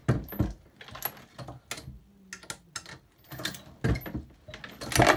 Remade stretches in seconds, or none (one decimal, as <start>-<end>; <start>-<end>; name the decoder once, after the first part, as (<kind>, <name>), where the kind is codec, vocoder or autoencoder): none